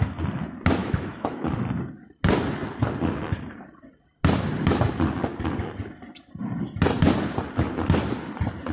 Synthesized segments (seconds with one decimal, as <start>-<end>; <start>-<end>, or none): 0.8-1.5

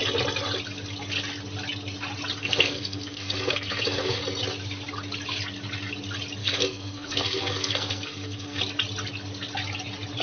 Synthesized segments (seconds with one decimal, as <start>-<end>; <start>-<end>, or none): 2.4-4.2; 6.4-8.6

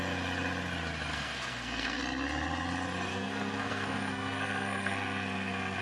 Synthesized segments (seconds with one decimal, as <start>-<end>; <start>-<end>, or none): 1.1-2.0; 3.1-5.8

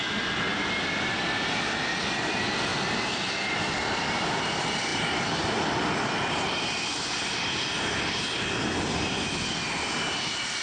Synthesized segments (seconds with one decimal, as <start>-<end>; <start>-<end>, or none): 2.7-4.5

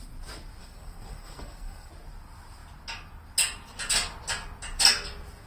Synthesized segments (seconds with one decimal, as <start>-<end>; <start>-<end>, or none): 0.6-1.9

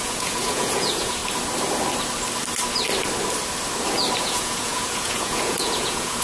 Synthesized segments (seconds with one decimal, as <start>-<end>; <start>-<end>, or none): 0.0-1.2; 4.2-6.2

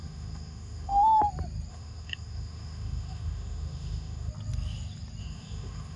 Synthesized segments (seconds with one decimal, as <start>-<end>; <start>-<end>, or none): 0.0-1.2; 1.7-4.3; 5.2-6.0